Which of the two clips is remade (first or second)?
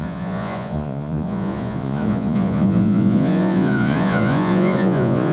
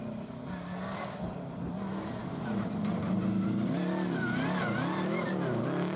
first